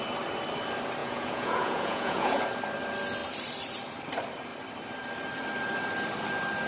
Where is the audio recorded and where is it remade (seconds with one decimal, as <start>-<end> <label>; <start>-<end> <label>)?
0.0-1.0 recorded; 1.0-2.4 remade; 2.4-6.7 recorded

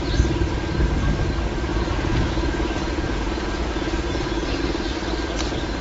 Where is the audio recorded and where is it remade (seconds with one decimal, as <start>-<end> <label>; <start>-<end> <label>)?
0.0-1.7 recorded; 1.7-4.6 remade; 4.6-5.8 recorded